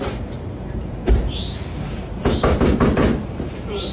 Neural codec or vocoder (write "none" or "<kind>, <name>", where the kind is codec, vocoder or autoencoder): vocoder, BigVGAN v2